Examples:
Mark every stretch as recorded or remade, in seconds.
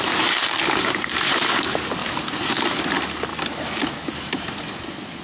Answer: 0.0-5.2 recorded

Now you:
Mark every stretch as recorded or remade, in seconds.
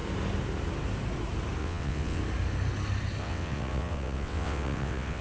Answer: 0.0-1.6 recorded; 1.6-2.2 remade; 2.2-3.2 recorded; 3.2-5.2 remade